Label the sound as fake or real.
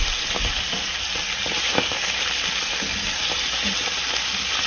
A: real